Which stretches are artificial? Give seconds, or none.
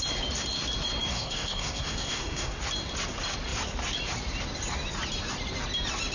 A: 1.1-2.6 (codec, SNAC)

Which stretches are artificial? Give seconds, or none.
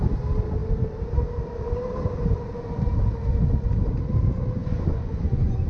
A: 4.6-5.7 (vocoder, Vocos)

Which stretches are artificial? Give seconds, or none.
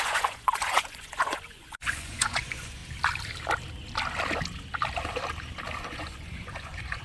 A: 0.0-2.8 (vocoder, Vocos); 5.8-7.0